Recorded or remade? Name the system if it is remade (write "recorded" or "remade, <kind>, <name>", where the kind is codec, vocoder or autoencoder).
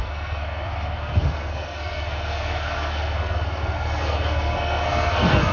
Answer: remade, codec, SNAC